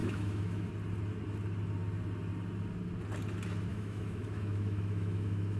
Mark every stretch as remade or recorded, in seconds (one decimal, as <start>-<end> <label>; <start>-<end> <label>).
0.0-0.7 remade; 0.7-3.7 recorded; 3.7-5.6 remade